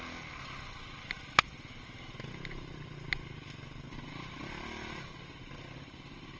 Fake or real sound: real